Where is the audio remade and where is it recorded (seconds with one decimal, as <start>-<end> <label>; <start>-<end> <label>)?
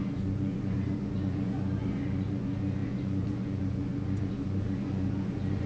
0.0-5.7 remade